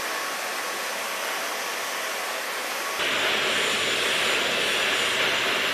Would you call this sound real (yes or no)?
yes